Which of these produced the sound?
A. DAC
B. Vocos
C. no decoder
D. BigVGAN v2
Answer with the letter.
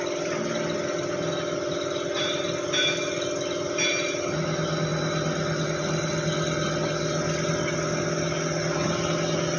C